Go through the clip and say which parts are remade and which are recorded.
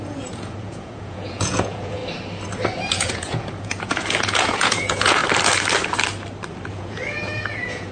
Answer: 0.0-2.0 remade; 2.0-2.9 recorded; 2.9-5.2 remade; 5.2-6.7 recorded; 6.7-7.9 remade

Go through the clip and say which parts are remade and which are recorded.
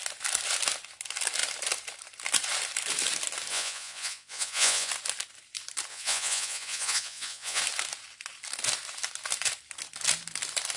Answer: 0.0-3.5 recorded; 3.5-4.9 remade; 4.9-5.9 recorded; 5.9-7.6 remade; 7.6-10.8 recorded